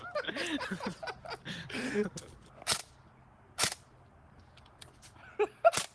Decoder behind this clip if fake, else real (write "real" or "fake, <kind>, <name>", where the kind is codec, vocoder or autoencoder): real